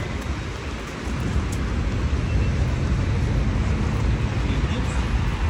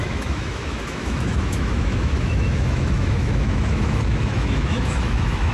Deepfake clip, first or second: second